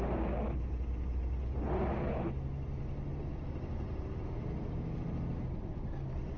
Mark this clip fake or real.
real